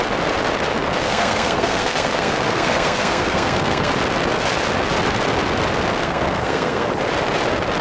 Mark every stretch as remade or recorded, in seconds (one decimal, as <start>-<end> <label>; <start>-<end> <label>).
0.0-1.0 recorded; 1.0-3.9 remade; 3.9-6.0 recorded; 6.0-6.9 remade; 6.9-7.8 recorded